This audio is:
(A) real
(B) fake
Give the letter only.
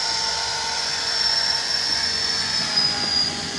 B